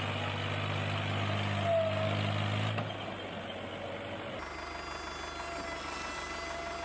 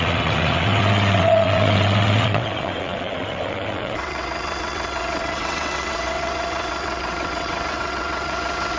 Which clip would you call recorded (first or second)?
first